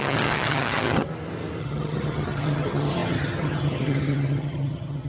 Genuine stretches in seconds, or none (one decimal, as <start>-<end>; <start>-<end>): 1.1-1.6

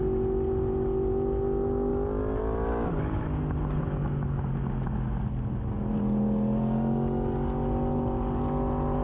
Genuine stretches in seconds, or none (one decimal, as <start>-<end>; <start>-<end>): 0.0-9.0

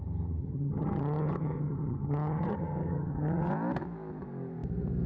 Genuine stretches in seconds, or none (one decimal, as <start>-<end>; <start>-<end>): 0.0-0.4; 3.5-5.1